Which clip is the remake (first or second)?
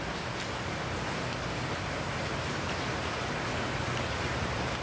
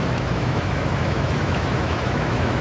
second